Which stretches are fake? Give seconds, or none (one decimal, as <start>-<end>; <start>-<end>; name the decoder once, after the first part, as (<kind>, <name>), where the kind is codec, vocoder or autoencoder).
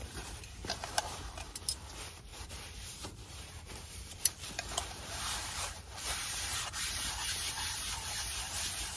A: 0.0-9.0 (vocoder, BigVGAN v2)